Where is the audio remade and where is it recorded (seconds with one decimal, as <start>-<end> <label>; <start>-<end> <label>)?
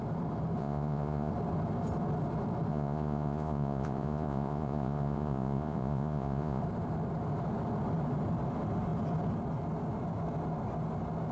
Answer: 0.0-0.6 recorded; 0.6-1.3 remade; 1.3-2.7 recorded; 2.7-6.6 remade; 6.6-11.3 recorded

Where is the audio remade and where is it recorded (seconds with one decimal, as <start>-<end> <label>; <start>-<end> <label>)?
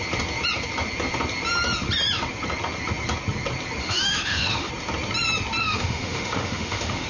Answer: 0.0-3.8 recorded; 3.8-4.7 remade; 4.7-5.6 recorded; 5.6-7.1 remade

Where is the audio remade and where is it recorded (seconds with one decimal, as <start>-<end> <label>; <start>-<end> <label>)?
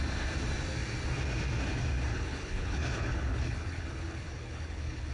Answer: 0.0-2.1 recorded; 2.1-5.1 remade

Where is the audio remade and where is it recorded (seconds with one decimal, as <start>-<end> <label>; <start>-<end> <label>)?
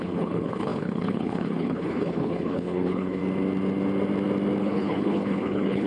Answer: 0.0-3.2 remade; 3.2-4.6 recorded; 4.6-5.9 remade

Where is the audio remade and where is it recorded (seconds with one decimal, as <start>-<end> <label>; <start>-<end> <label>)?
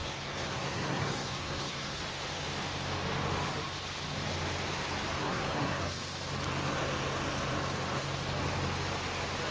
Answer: 0.0-2.0 remade; 2.0-5.2 recorded; 5.2-5.8 remade; 5.8-9.5 recorded